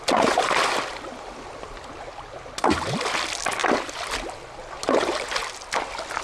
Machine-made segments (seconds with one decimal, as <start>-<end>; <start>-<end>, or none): none